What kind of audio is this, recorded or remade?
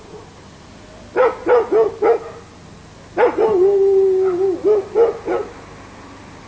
recorded